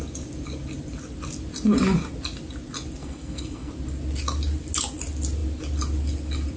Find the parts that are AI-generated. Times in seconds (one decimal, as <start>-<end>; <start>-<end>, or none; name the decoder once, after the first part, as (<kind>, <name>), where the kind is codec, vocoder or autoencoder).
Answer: 3.0-3.7 (codec, SNAC)